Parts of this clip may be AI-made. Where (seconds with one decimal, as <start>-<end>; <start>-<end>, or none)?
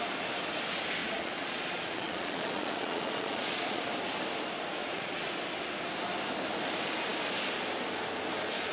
1.0-3.8; 4.8-5.3